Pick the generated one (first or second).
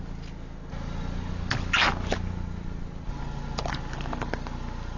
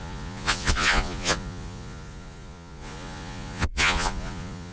second